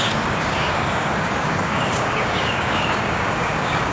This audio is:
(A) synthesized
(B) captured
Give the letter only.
A